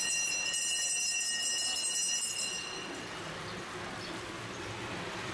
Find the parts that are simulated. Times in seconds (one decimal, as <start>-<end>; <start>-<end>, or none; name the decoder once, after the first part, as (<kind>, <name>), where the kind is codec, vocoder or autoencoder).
none